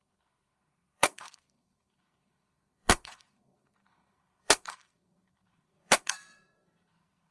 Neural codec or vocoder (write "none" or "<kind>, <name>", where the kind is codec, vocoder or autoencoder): codec, SNAC